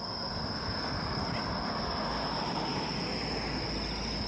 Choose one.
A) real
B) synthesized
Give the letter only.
A